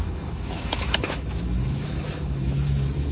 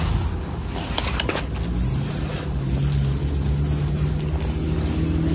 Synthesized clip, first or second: first